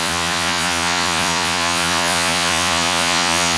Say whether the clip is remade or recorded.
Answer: remade